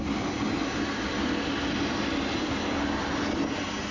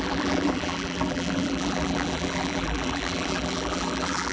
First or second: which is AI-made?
second